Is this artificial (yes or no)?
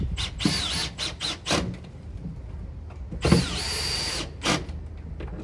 no